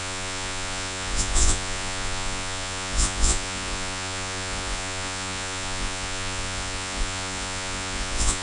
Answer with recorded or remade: remade